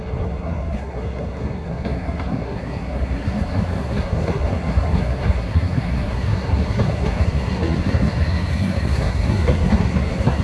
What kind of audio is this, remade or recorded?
remade